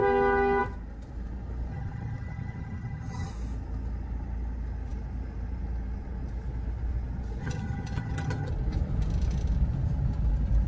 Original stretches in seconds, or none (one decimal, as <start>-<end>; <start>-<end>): 0.0-1.7; 3.3-7.4; 8.5-10.7